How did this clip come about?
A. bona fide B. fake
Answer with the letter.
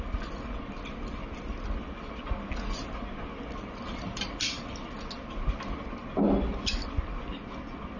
A